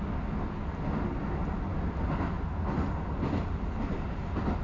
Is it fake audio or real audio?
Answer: real